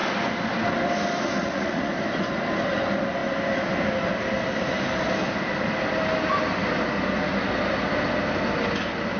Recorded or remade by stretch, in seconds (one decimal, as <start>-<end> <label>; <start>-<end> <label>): 0.0-1.4 recorded; 1.4-1.9 remade; 1.9-9.2 recorded